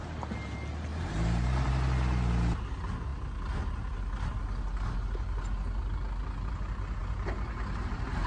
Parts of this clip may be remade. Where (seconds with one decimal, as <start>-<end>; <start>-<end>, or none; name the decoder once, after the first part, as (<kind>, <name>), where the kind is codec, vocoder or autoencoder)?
0.9-1.7 (vocoder, BigVGAN v2)